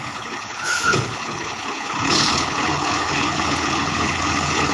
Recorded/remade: remade